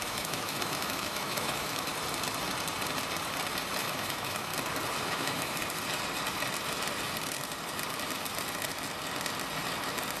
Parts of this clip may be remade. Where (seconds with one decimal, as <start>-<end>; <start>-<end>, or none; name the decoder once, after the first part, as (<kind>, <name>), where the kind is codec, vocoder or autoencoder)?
0.0-1.9 (autoencoder, DAC-VAE); 3.8-4.5; 5.0-5.6